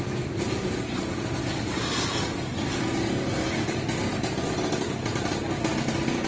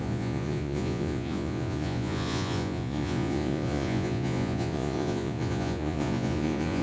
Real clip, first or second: first